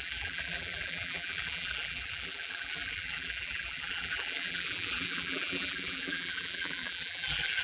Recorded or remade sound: remade